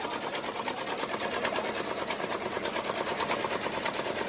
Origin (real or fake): real